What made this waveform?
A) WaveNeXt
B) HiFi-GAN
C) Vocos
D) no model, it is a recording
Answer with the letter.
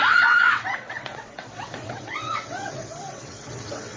A